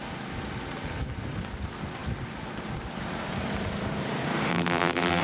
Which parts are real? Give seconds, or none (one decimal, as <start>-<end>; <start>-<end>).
0.0-4.5